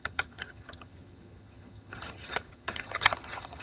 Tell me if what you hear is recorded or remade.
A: remade